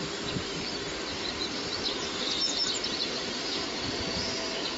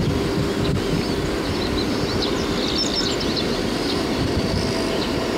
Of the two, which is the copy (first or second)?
first